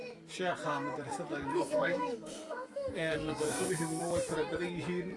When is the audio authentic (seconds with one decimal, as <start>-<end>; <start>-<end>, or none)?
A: 0.0-1.5; 4.0-5.2